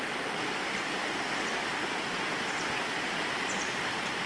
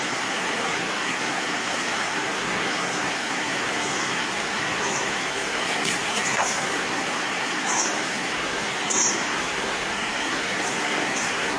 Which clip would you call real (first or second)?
first